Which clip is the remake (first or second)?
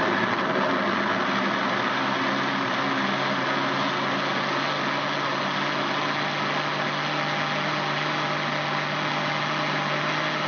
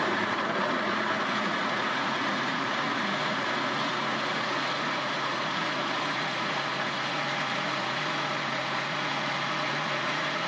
second